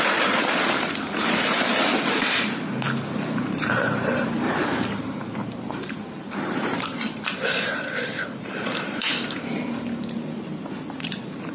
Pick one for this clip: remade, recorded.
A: remade